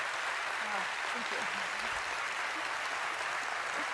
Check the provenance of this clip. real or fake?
real